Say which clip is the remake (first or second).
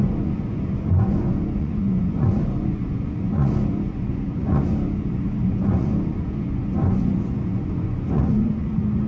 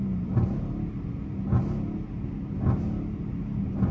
first